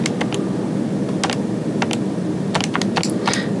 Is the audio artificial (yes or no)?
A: no